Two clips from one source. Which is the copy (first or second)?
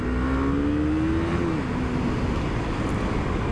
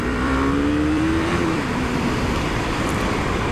second